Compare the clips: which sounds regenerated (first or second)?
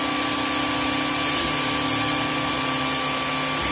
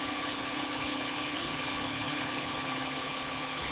second